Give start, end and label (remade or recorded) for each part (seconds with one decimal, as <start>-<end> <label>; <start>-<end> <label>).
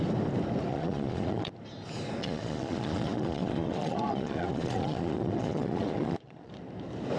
0.0-0.7 recorded; 0.7-1.5 remade; 1.5-2.2 recorded; 2.2-6.5 remade; 6.5-7.2 recorded